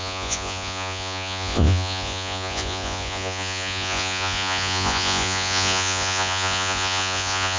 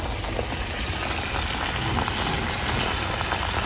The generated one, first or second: first